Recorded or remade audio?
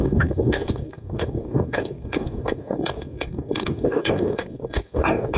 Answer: remade